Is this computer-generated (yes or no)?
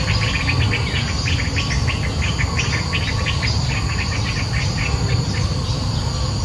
no